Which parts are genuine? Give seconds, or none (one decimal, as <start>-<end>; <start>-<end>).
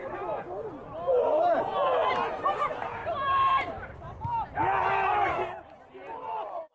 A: 0.5-1.1; 1.6-3.0; 3.9-6.7